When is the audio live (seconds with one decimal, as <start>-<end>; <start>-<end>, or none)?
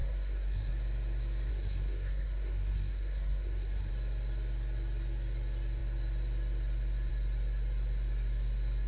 0.7-1.5; 3.9-8.9